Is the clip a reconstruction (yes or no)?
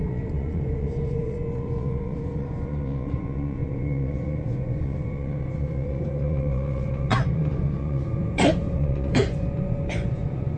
yes